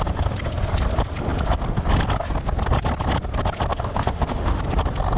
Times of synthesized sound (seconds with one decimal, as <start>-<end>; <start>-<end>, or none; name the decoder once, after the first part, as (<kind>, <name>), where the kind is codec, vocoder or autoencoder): 3.7-4.6 (autoencoder, DAC-VAE)